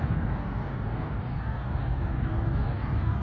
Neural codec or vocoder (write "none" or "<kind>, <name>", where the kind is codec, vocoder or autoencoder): codec, DAC